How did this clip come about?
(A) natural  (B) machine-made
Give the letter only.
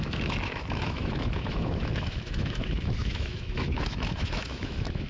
B